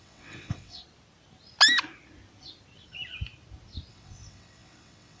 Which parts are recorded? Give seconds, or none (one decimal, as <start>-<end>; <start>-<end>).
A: 0.8-3.9